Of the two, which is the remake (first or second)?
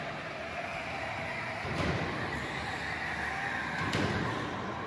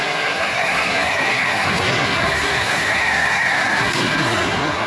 second